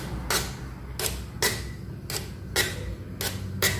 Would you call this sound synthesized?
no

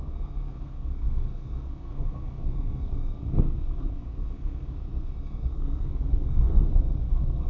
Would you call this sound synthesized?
yes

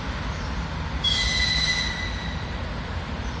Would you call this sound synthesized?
no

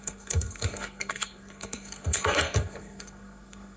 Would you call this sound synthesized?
yes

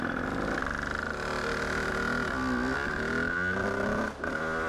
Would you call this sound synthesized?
no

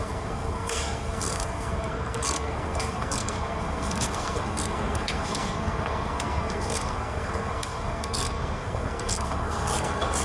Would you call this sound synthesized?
yes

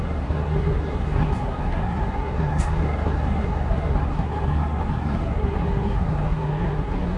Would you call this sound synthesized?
yes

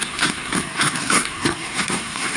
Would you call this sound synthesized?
yes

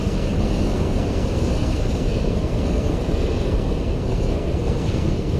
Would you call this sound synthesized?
yes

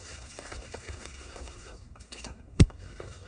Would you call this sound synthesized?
yes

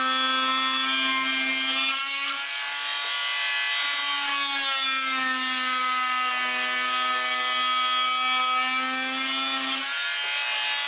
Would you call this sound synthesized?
no